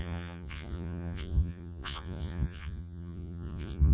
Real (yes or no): no